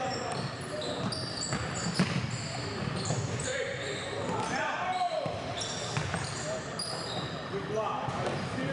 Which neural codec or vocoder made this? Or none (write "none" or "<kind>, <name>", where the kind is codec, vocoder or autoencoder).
none